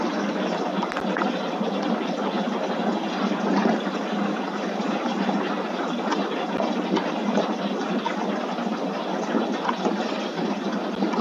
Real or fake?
real